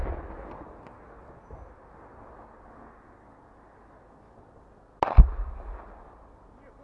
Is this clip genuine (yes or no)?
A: yes